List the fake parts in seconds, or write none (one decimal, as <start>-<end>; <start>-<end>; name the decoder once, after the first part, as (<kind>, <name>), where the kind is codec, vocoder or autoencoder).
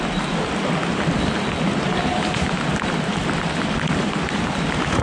0.0-2.1 (vocoder, BigVGAN v2); 2.7-5.0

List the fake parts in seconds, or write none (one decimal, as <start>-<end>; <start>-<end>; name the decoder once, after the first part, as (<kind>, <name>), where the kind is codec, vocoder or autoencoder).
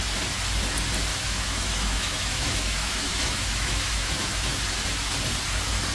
1.1-4.6 (autoencoder, DAC-VAE)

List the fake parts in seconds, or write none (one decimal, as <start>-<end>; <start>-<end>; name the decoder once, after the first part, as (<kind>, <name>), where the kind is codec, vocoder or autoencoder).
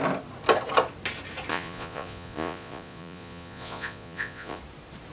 1.5-4.6 (vocoder, Vocos)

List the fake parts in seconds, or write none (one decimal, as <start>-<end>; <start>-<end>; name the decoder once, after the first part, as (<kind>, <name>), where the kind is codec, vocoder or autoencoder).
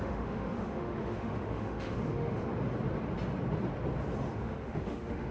0.0-2.5 (autoencoder, DAC-VAE); 4.3-5.3